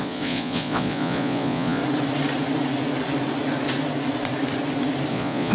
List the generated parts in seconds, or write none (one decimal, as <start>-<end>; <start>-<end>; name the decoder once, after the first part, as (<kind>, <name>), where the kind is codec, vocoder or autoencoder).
0.0-1.8 (vocoder, Vocos); 5.1-5.5